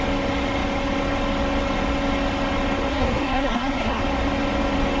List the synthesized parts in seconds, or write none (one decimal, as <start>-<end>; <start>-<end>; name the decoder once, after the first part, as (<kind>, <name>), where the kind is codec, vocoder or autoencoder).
2.9-4.0 (codec, SNAC)